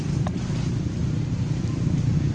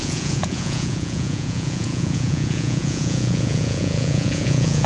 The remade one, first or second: second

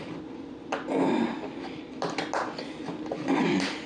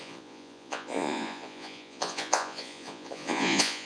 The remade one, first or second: second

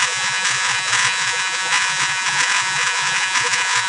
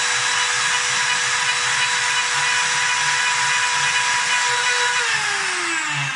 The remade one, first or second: first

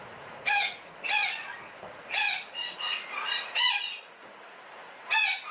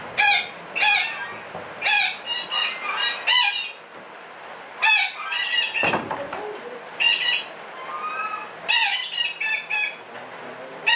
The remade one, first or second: first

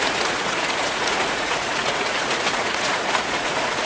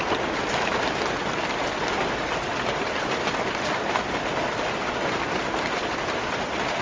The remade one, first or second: first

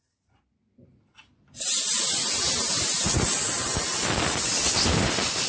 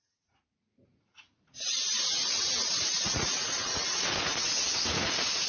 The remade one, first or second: second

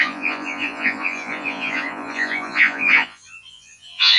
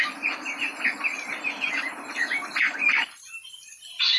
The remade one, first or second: first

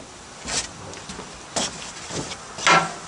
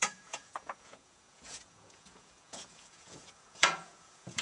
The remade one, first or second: second